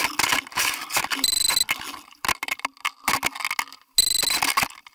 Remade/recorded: recorded